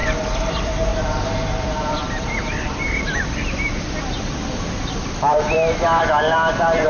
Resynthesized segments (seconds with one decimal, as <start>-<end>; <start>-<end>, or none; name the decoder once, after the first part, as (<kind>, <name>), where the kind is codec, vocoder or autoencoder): 0.0-6.9 (vocoder, BigVGAN v2)

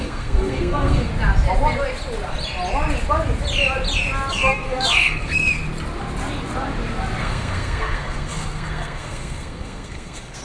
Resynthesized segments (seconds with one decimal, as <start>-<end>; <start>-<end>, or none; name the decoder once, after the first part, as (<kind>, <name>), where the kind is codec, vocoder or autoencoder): 0.0-1.1 (codec, SNAC); 4.3-5.6; 7.2-10.4